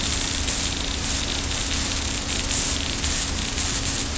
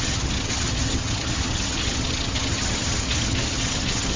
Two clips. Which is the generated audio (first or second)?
second